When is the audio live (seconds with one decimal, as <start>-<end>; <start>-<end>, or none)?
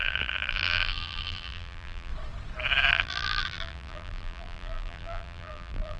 2.1-2.9